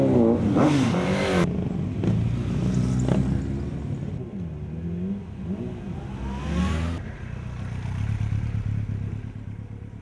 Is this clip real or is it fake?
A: real